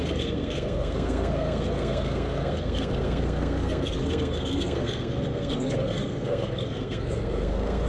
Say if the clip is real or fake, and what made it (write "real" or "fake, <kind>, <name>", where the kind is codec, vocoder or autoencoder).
fake, codec, SNAC